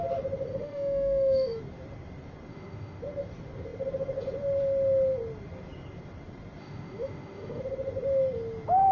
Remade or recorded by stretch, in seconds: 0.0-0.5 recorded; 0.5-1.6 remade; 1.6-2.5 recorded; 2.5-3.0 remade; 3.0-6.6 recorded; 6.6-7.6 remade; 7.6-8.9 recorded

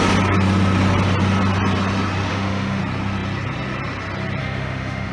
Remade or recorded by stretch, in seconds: 0.0-2.3 recorded; 2.3-2.8 remade; 2.8-4.4 recorded; 4.4-5.1 remade

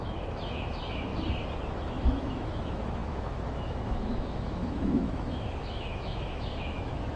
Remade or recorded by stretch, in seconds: 0.0-1.1 remade; 1.1-1.7 recorded; 1.7-7.2 remade